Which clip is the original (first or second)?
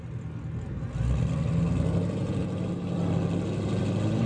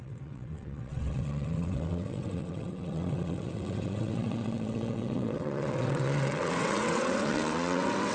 first